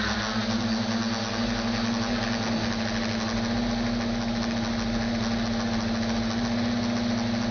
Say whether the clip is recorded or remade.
recorded